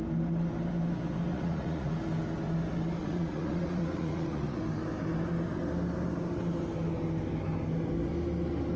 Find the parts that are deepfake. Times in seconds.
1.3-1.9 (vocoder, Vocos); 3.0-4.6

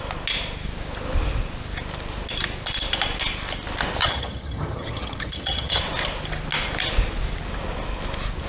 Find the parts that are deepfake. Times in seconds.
4.0-5.8 (vocoder, HiFi-GAN)

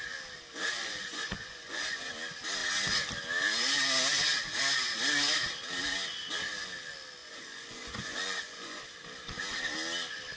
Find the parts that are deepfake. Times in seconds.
0.8-2.1 (vocoder, Vocos); 7.2-8.8